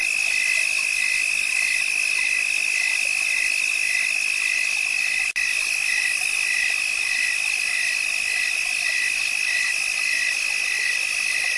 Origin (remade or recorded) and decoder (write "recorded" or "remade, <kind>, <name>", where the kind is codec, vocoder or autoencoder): recorded